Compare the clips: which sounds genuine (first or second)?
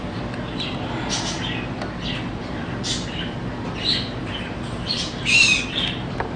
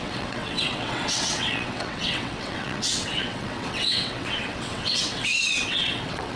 first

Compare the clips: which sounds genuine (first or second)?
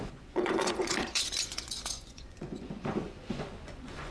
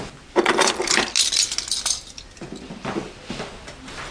second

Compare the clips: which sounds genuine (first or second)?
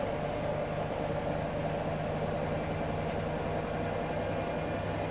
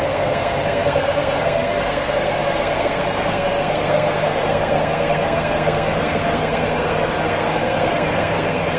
first